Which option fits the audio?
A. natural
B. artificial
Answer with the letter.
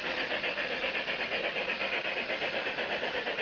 A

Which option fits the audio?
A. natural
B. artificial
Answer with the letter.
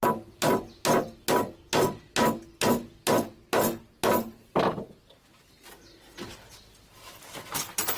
A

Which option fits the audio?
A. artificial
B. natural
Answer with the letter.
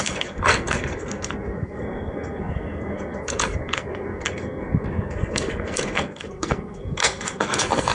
A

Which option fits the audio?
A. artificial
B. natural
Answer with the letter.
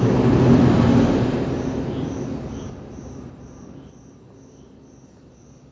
B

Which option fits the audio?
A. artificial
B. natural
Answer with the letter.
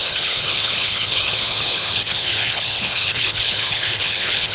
A